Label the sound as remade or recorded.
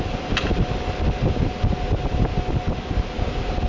recorded